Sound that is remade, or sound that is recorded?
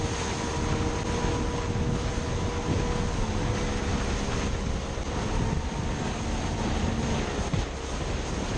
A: recorded